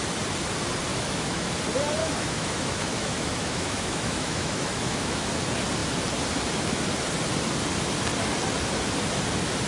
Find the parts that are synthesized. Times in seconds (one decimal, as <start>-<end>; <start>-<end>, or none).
0.9-1.5; 2.0-5.3